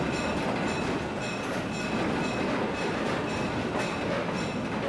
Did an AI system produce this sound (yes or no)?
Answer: no